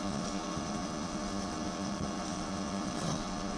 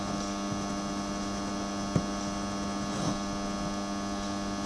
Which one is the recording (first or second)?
second